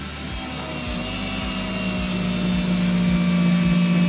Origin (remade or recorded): recorded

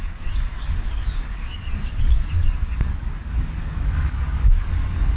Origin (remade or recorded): remade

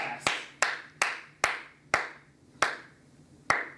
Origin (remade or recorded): recorded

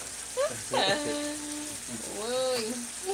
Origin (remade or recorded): recorded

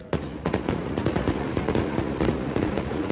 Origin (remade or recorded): remade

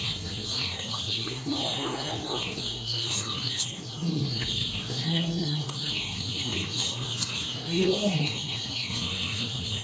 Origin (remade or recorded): remade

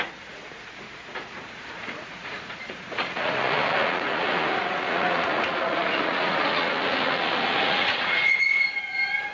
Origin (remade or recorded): remade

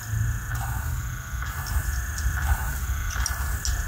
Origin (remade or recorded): recorded